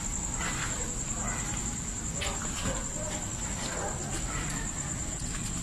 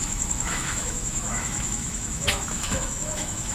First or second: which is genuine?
first